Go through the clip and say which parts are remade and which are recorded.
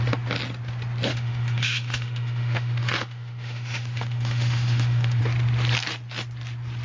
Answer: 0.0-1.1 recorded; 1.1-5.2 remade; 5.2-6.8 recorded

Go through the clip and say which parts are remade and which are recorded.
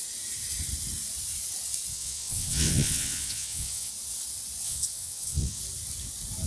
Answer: 0.0-1.9 recorded; 1.9-3.9 remade; 3.9-4.6 recorded; 4.6-5.6 remade; 5.6-6.5 recorded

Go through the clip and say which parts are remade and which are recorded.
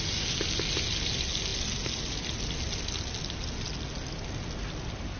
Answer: 0.0-5.2 recorded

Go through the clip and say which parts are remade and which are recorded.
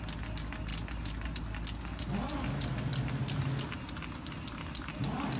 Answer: 0.0-5.4 recorded